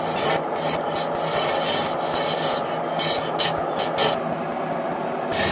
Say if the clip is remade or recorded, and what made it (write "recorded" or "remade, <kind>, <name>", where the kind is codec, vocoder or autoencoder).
recorded